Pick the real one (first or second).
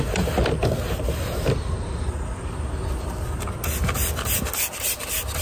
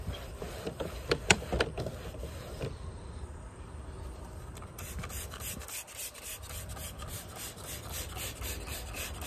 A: first